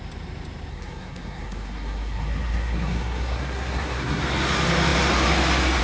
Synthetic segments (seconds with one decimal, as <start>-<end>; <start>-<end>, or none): 0.7-4.2